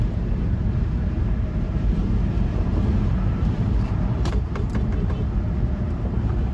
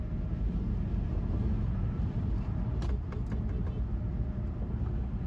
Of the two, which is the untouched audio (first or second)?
second